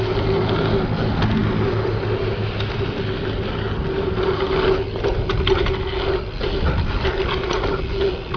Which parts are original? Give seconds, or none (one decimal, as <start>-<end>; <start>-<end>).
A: 0.0-8.4